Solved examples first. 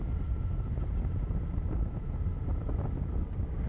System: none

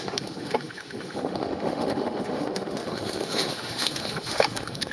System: autoencoder, DAC-VAE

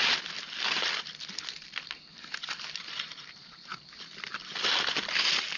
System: none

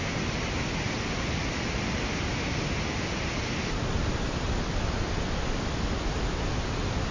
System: none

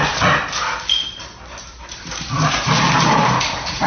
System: none